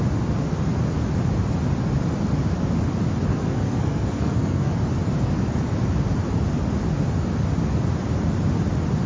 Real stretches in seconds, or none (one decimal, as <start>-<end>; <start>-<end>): 0.0-3.3; 4.7-9.1

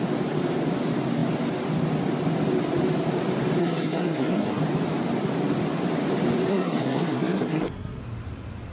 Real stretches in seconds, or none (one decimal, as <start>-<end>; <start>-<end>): 0.0-3.6; 4.6-6.5; 8.0-8.7

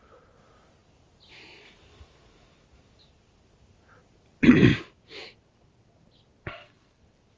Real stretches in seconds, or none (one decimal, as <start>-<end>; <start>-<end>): 0.0-6.4; 7.0-7.4